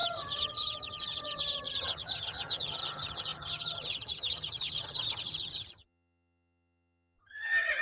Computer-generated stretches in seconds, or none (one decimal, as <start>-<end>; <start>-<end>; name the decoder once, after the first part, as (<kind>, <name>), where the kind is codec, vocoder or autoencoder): 0.0-7.8 (vocoder, HiFi-GAN)